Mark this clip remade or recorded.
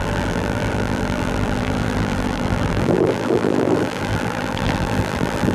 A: remade